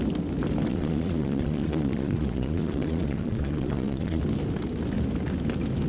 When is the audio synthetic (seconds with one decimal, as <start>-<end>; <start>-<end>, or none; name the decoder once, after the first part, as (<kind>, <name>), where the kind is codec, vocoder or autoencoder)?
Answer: 0.7-4.2 (vocoder, Vocos)